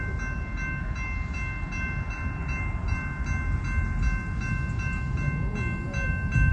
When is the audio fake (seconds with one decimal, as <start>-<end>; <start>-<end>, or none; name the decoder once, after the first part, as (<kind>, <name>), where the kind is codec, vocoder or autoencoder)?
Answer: none